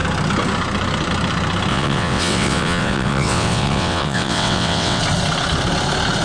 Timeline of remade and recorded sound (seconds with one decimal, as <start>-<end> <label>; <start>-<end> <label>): 0.0-1.7 recorded; 1.7-5.0 remade; 5.0-6.2 recorded